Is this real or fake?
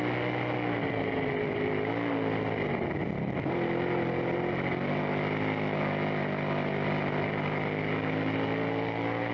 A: real